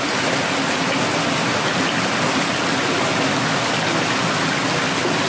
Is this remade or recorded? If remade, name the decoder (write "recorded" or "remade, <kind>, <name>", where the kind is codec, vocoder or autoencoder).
recorded